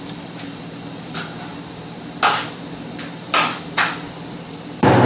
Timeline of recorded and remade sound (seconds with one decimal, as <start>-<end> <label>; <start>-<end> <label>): 0.0-1.5 remade; 1.5-2.7 recorded; 2.7-5.1 remade